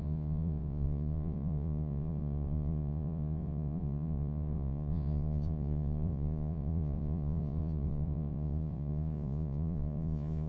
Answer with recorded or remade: remade